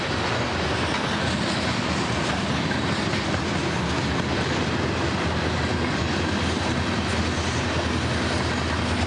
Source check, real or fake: real